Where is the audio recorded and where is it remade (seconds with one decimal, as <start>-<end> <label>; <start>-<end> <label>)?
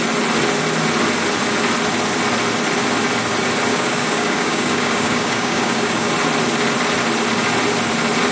0.0-3.7 recorded; 3.7-6.1 remade; 6.1-8.3 recorded